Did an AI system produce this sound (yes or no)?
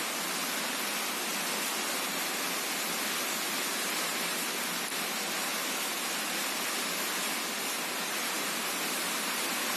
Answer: no